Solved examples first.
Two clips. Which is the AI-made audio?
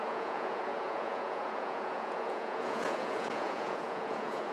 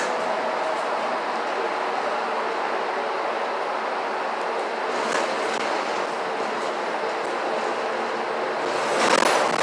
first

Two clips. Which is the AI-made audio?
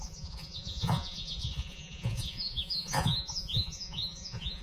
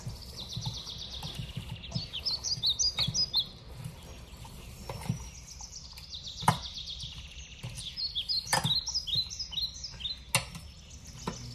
first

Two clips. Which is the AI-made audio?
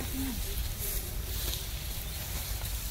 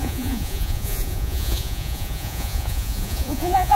second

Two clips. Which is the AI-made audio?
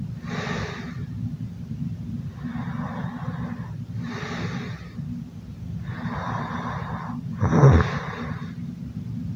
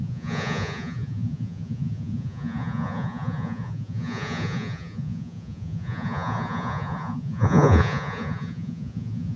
second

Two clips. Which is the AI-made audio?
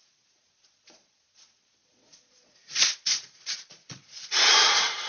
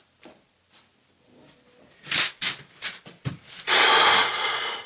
first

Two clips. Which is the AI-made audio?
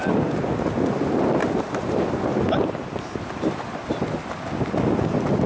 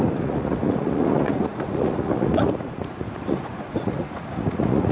second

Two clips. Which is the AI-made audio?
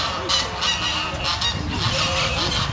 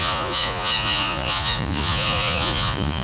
second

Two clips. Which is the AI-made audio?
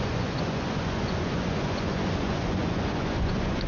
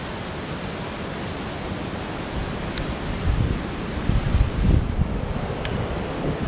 first